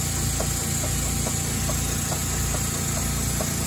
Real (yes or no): yes